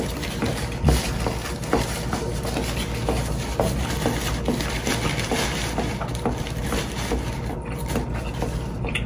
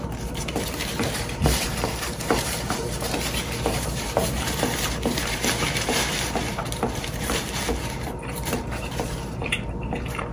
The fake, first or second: second